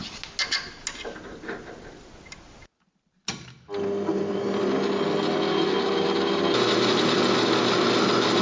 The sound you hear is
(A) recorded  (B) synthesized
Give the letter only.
A